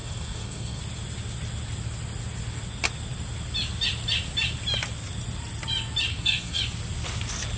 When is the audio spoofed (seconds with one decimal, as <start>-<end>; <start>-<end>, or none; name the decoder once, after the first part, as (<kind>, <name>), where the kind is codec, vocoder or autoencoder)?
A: 0.0-0.8 (codec, SNAC); 6.1-6.6